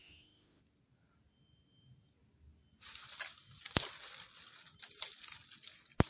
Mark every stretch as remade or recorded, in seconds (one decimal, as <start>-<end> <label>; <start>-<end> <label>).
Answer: 0.0-0.6 remade; 0.6-6.1 recorded